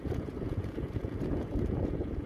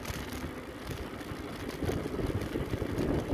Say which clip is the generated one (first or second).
first